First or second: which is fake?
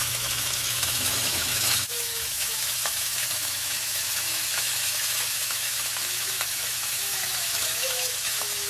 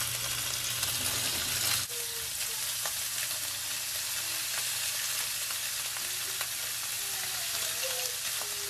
first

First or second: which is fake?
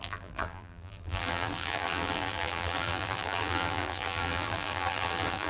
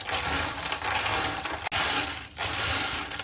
first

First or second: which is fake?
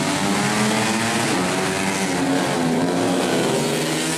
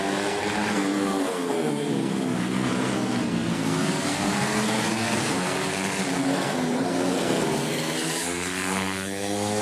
second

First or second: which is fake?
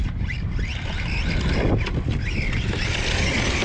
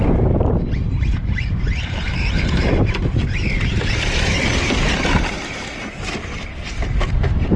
second